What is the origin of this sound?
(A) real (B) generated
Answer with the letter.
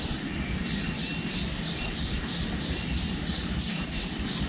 A